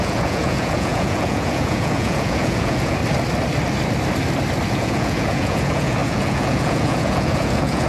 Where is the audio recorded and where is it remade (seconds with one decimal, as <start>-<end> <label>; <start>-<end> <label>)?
0.0-3.0 remade; 3.0-4.7 recorded; 4.7-7.9 remade